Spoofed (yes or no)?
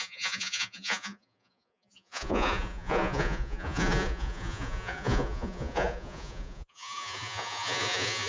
yes